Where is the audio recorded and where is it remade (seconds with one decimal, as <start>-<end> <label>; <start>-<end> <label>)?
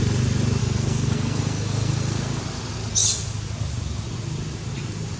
0.0-0.6 recorded; 0.6-2.4 remade; 2.4-5.2 recorded